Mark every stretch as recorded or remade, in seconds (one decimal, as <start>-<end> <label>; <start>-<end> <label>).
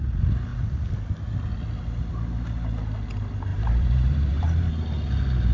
0.0-3.5 recorded; 3.5-4.7 remade; 4.7-5.5 recorded